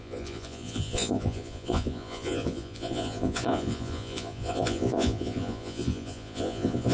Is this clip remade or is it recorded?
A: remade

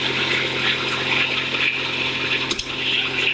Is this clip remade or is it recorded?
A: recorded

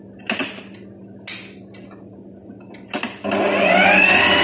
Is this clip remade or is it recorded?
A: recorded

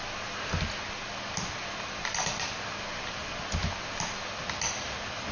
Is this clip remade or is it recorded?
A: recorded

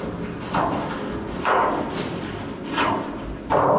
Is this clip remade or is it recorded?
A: recorded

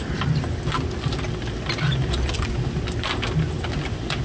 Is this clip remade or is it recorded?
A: recorded